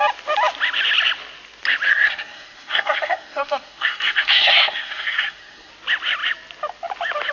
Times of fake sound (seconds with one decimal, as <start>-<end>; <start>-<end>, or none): 1.9-5.7